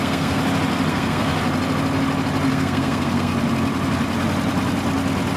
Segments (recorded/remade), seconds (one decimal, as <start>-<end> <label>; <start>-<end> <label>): 0.0-0.4 remade; 0.4-0.9 recorded; 0.9-1.3 remade; 1.3-2.5 recorded; 2.5-3.3 remade; 3.3-5.4 recorded